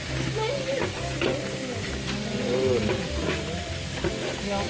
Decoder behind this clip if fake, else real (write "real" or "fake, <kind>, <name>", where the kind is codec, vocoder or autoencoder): real